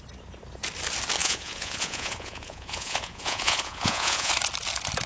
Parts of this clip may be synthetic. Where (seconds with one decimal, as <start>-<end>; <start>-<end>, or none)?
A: 1.2-4.3